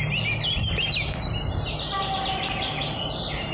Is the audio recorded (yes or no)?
yes